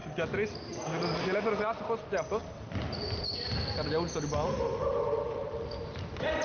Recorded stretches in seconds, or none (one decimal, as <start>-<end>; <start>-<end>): 0.0-6.4